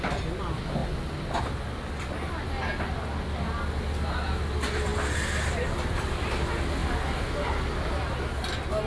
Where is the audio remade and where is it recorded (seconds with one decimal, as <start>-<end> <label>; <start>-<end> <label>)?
0.0-8.9 recorded